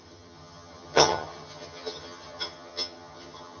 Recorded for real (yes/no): no